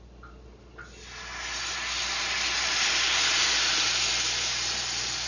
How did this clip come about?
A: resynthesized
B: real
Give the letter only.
B